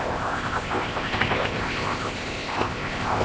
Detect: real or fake fake